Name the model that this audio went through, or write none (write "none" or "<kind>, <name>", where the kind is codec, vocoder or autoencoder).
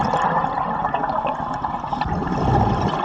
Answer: none